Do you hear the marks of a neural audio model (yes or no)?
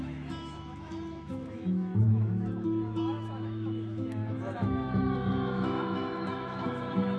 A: yes